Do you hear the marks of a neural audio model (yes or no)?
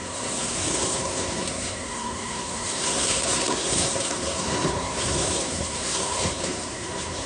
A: yes